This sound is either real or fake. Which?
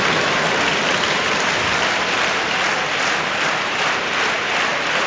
real